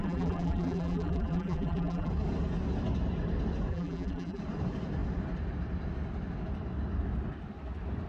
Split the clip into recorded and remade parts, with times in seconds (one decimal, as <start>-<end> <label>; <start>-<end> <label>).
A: 0.0-2.1 remade; 2.1-3.7 recorded; 3.7-4.4 remade; 4.4-8.1 recorded